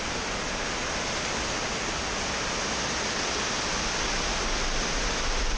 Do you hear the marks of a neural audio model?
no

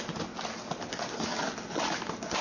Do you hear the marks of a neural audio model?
no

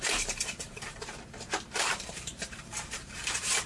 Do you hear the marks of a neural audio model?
yes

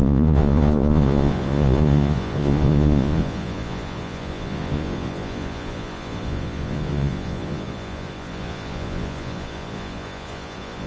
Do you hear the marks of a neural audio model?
yes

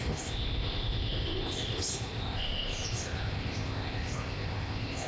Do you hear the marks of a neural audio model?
yes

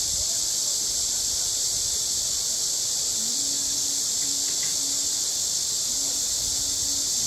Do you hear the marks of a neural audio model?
no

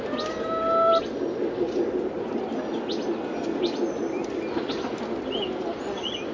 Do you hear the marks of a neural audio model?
no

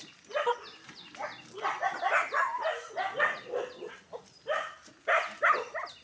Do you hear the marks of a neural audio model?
no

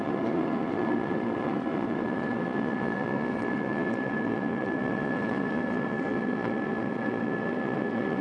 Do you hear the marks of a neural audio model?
yes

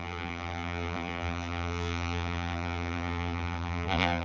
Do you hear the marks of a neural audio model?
yes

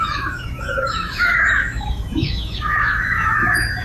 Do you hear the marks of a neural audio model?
yes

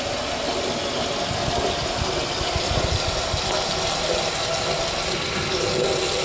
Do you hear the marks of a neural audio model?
no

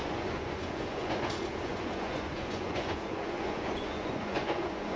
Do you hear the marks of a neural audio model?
yes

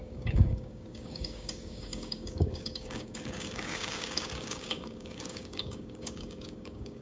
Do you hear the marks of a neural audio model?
yes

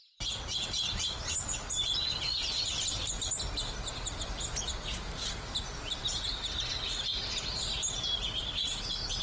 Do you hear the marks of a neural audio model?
no